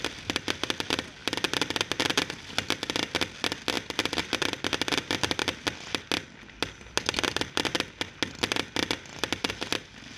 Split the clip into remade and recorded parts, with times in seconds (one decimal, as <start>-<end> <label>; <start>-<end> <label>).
0.0-10.2 recorded